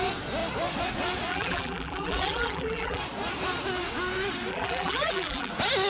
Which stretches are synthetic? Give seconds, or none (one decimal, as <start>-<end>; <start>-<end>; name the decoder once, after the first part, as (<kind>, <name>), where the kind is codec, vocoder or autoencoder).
1.3-3.0 (vocoder, BigVGAN v2); 4.5-5.5